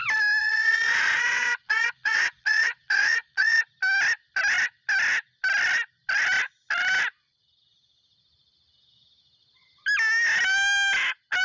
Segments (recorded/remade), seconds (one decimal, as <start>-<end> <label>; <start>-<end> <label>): 0.0-0.4 recorded; 0.4-3.6 remade; 3.6-11.4 recorded